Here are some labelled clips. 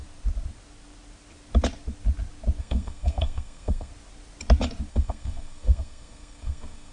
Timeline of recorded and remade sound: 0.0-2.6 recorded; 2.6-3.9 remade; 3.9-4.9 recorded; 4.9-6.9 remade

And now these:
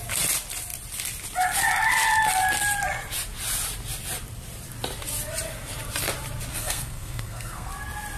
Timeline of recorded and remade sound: 0.0-6.5 recorded; 6.5-7.7 remade; 7.7-8.2 recorded